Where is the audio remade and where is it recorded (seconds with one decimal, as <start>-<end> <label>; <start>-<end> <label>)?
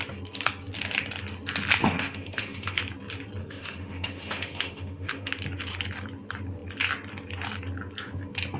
0.0-1.8 recorded; 1.8-2.8 remade; 2.8-3.4 recorded; 3.4-5.3 remade; 5.3-8.6 recorded